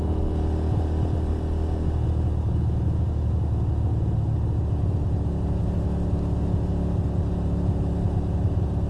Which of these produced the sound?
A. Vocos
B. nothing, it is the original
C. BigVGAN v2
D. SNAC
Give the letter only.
B